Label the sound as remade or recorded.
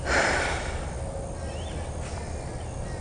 recorded